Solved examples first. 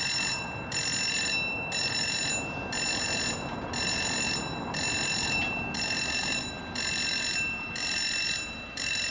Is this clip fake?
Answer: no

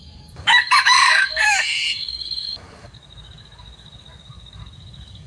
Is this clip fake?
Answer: yes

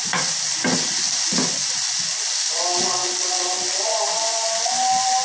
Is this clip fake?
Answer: no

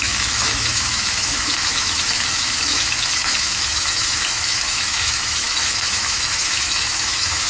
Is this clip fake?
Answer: yes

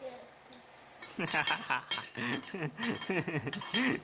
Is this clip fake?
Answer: no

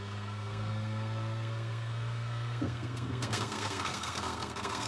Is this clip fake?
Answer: yes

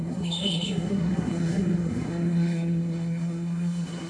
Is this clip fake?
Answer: yes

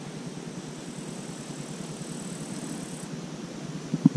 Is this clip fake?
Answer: no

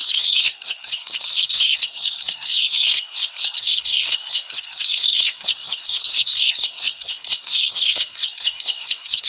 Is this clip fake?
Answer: yes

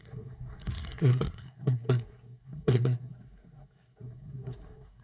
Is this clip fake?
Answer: yes